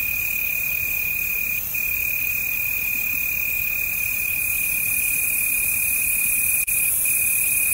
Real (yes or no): no